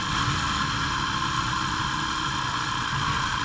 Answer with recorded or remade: recorded